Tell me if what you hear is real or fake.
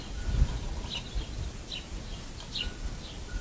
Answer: real